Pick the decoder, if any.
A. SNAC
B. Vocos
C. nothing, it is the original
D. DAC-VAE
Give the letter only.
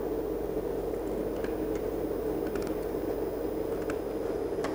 C